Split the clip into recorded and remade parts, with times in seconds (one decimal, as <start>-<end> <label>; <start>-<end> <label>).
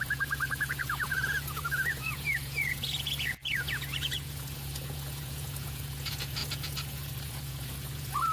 0.0-8.3 remade